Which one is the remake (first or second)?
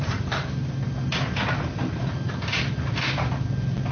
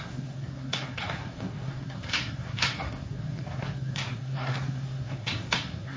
second